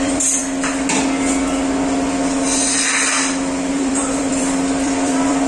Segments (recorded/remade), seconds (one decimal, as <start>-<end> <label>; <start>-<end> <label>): 0.0-0.4 remade; 0.4-3.7 recorded; 3.7-5.5 remade